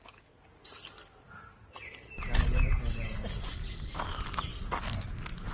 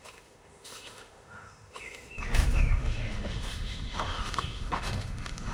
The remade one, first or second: second